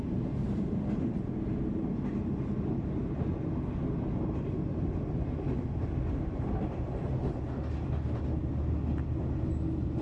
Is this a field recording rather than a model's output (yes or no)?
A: yes